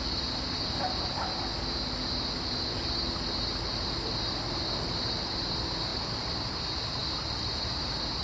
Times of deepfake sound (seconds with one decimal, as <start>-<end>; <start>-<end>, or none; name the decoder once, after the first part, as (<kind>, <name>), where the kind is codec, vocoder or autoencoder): none